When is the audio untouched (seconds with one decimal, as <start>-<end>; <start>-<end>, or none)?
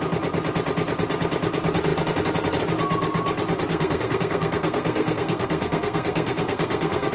0.0-3.7